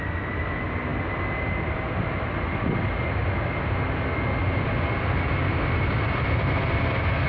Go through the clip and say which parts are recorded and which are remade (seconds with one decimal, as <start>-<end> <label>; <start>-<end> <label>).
0.0-7.3 recorded